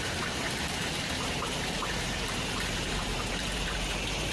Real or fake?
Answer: fake